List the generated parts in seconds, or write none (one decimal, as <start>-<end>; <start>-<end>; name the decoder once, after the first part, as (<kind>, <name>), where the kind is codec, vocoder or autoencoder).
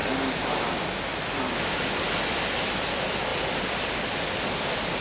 3.3-5.0 (vocoder, BigVGAN v2)